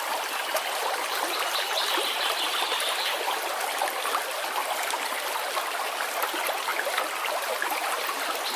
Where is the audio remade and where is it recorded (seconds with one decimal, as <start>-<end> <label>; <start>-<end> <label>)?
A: 0.0-8.6 recorded